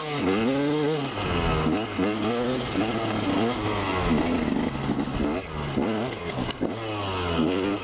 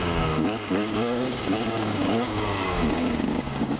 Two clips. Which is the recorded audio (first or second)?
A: first